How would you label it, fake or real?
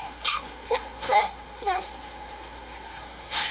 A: fake